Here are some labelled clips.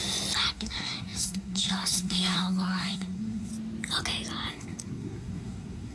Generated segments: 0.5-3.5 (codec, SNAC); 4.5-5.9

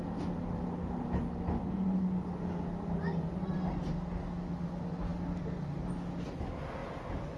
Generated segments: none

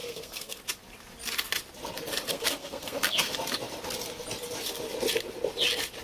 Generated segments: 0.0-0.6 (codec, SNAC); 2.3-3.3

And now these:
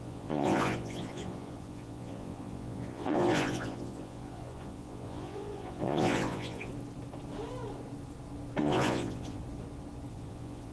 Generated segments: 0.0-6.7 (vocoder, Vocos); 8.6-9.4; 10.1-10.7

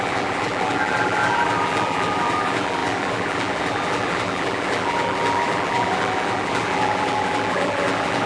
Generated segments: 0.0-8.3 (vocoder, BigVGAN v2)